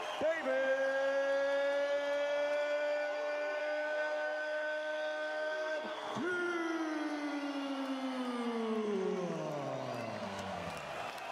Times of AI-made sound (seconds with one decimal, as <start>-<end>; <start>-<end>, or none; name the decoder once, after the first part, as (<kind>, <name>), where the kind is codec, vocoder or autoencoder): 3.6-6.3 (codec, SNAC); 10.2-10.7